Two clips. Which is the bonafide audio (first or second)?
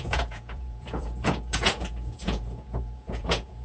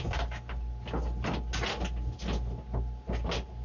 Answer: second